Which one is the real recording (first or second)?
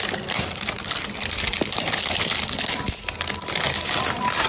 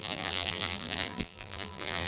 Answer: first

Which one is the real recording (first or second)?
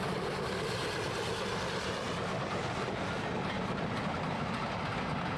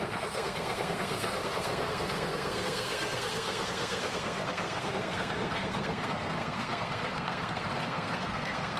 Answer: first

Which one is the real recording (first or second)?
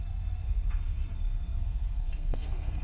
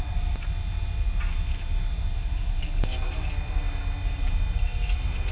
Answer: second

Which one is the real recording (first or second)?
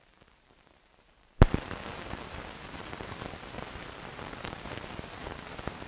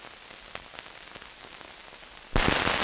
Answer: second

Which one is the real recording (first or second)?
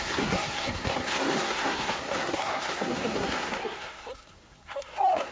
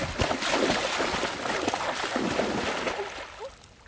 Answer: second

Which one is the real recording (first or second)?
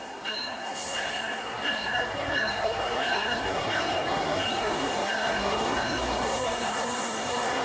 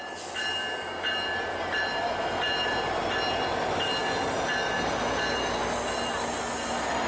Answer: second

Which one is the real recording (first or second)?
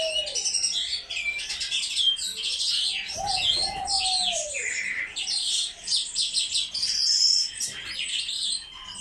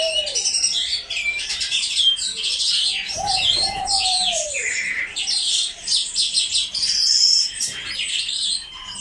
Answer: first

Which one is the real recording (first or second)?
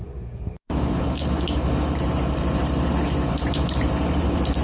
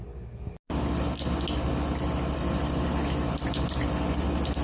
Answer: second